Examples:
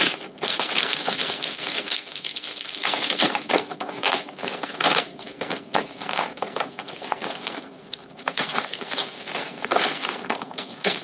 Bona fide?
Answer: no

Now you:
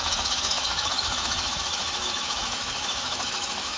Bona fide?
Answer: no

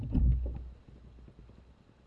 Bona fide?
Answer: yes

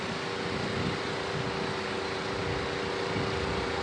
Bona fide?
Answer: yes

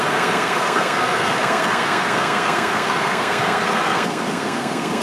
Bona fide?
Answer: no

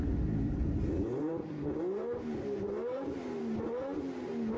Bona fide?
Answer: no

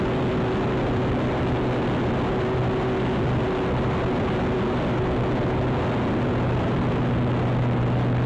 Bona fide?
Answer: yes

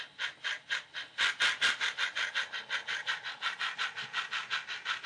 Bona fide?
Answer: yes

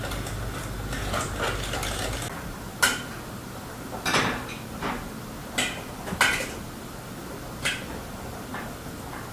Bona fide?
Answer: yes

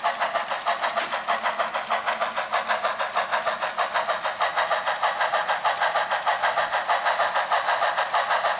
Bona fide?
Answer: yes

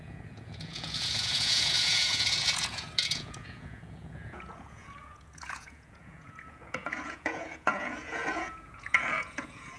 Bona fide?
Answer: no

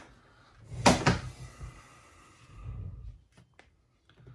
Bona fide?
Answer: yes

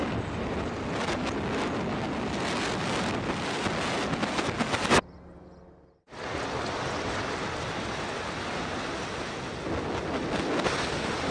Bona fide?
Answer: yes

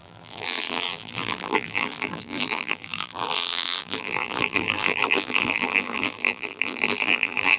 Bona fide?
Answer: no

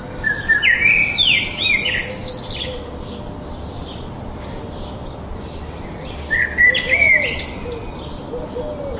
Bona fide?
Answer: yes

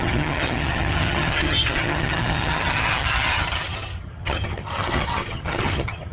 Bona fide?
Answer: no